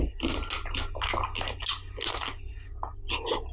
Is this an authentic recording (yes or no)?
yes